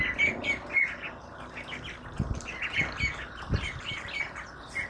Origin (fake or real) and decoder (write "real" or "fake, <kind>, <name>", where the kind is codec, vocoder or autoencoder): real